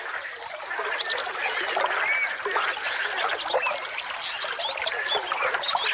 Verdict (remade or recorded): recorded